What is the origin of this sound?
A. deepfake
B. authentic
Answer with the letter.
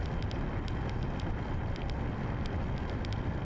B